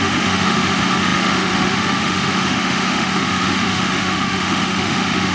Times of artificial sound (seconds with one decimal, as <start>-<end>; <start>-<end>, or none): 0.0-5.3